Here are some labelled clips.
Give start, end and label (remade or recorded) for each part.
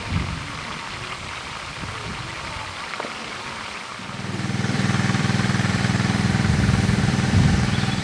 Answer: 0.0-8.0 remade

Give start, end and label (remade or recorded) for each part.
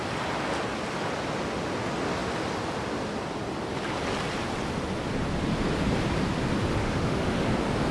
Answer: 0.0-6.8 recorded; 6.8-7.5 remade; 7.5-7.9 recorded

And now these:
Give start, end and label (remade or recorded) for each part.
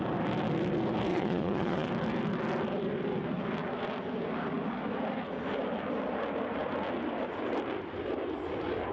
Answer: 0.0-1.1 recorded; 1.1-1.9 remade; 1.9-8.9 recorded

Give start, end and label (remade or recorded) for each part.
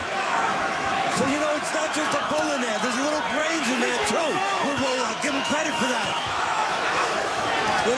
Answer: 0.0-2.7 remade; 2.7-3.4 recorded; 3.4-7.5 remade; 7.5-8.0 recorded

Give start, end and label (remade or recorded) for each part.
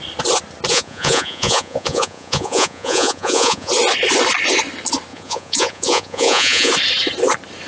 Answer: 0.0-0.7 recorded; 0.7-3.7 remade; 3.7-5.1 recorded; 5.1-6.7 remade; 6.7-7.7 recorded